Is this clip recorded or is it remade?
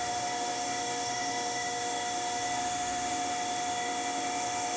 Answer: remade